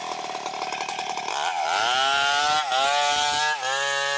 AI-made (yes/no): no